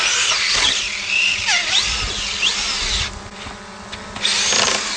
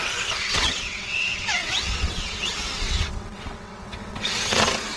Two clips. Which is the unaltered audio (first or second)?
first